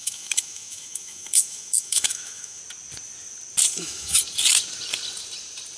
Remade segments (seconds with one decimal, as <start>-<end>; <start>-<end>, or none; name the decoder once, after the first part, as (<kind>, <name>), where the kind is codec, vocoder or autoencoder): 0.0-2.6 (autoencoder, DAC-VAE); 3.7-4.2